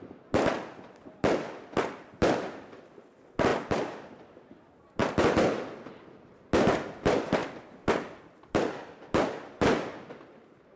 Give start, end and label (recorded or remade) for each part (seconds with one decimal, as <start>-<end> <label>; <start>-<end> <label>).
0.0-10.8 recorded